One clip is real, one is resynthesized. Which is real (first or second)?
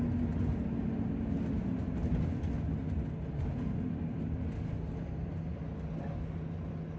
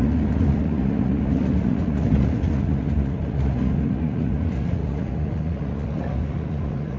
first